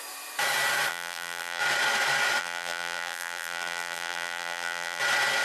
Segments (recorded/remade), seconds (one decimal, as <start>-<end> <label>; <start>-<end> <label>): 0.0-0.9 recorded; 0.9-1.6 remade; 1.6-2.4 recorded; 2.4-5.0 remade; 5.0-5.4 recorded